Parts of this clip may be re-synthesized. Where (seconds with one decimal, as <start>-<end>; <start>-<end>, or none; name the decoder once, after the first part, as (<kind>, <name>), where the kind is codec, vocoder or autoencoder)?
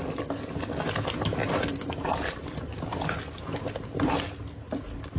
1.4-4.3 (vocoder, BigVGAN v2)